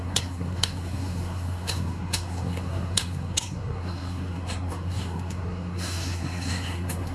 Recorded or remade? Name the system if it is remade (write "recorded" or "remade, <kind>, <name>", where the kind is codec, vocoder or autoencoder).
remade, codec, SNAC